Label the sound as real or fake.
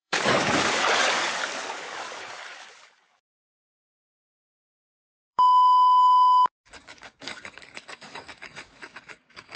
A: fake